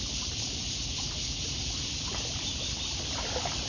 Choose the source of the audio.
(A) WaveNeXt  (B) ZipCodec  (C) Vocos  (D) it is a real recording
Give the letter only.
D